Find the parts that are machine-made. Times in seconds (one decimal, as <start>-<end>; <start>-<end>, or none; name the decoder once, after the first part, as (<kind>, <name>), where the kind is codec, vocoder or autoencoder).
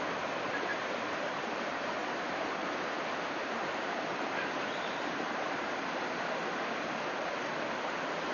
0.7-5.5 (vocoder, BigVGAN v2)